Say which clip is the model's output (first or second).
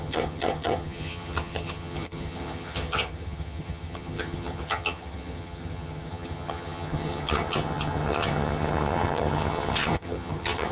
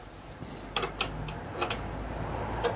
first